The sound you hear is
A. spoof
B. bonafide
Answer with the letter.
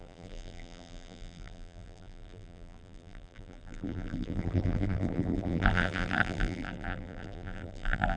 A